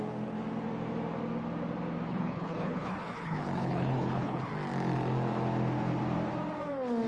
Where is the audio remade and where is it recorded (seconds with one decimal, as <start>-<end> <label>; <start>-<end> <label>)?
0.0-2.1 recorded; 2.1-4.5 remade; 4.5-7.1 recorded